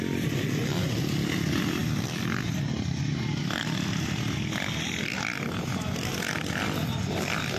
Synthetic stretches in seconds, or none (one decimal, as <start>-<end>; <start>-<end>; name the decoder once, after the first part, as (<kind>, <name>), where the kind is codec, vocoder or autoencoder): none